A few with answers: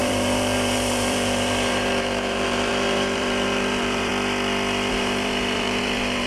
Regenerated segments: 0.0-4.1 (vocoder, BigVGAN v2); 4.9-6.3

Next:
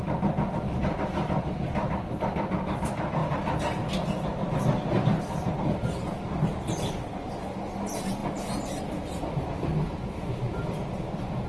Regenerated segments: none

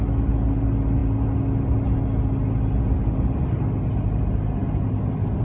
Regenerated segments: none

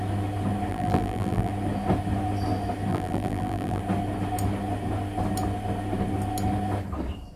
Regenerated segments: 0.7-1.5 (vocoder, BigVGAN v2); 2.9-3.8

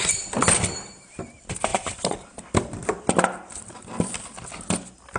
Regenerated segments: 1.7-2.9 (vocoder, BigVGAN v2)

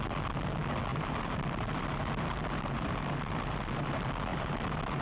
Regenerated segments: 0.9-3.9 (vocoder, BigVGAN v2); 4.3-5.0

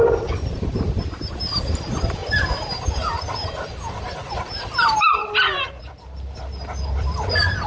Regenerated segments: 0.0-7.7 (vocoder, BigVGAN v2)

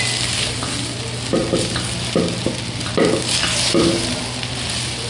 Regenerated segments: 0.0-5.1 (vocoder, BigVGAN v2)